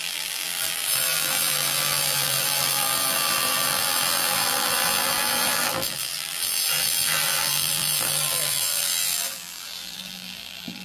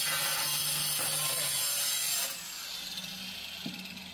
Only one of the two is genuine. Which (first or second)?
second